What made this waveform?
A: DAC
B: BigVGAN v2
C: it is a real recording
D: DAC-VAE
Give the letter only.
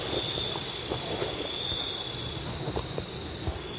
C